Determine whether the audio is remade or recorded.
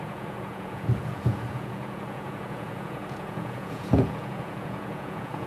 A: remade